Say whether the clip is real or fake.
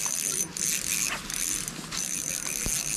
real